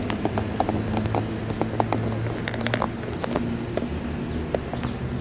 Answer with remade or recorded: recorded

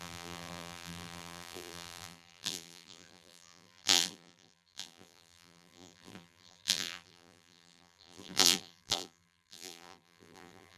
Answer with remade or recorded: remade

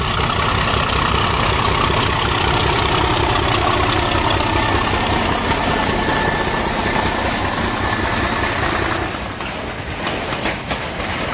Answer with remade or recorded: recorded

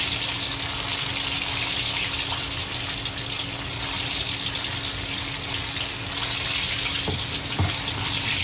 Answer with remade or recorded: recorded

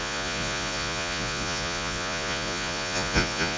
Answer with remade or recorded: remade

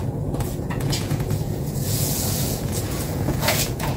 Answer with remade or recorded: remade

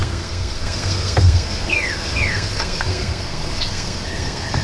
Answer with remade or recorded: remade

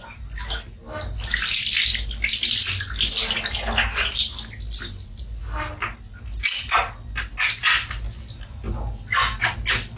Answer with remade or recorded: recorded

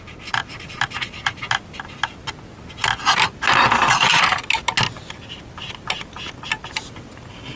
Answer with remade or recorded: recorded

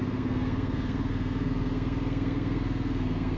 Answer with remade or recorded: remade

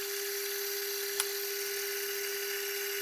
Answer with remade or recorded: recorded